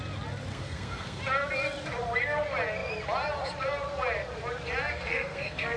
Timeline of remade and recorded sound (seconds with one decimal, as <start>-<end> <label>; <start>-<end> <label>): 0.0-0.5 recorded; 0.5-1.2 remade; 1.2-4.9 recorded; 4.9-5.8 remade